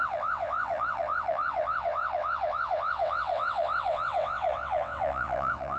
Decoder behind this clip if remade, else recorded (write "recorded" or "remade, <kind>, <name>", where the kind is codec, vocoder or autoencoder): remade, vocoder, WaveNeXt